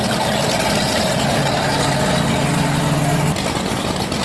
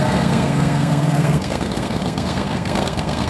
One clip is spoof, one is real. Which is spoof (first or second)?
second